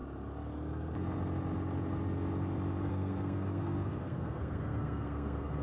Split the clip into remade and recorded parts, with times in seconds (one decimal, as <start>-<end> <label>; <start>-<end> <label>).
0.0-2.9 recorded; 2.9-5.6 remade